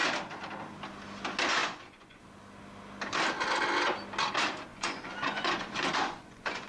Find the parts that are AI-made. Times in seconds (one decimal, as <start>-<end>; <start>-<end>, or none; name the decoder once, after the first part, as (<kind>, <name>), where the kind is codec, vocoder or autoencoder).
1.6-2.2 (vocoder, Vocos); 4.7-6.7